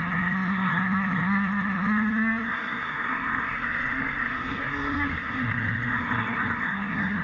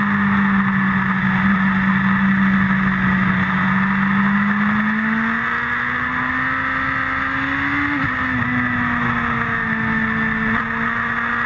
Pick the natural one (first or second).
second